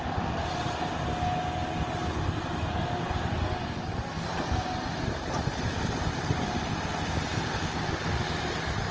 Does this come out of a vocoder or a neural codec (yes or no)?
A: no